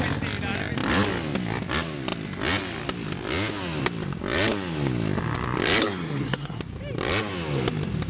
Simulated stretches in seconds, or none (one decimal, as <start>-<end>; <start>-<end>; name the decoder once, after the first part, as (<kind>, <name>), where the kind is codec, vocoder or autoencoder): 5.8-6.6 (codec, SNAC)